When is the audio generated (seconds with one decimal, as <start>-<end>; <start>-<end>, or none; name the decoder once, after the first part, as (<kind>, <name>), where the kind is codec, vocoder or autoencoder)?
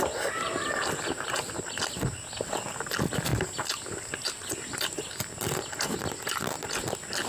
none